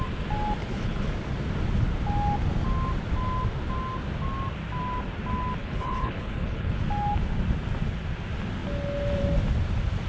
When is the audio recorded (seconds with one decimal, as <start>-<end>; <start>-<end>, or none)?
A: 0.0-0.6; 1.1-5.6; 6.8-10.1